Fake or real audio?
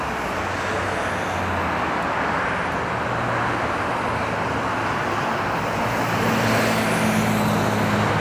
real